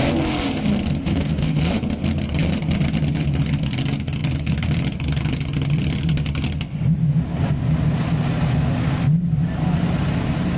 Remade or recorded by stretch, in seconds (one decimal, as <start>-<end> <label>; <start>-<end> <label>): 0.0-1.0 recorded; 1.0-1.6 remade; 1.6-10.6 recorded